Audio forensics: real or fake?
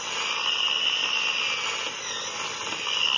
real